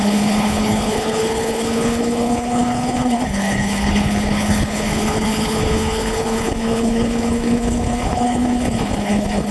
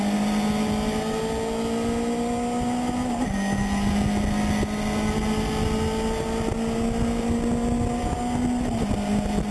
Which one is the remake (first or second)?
first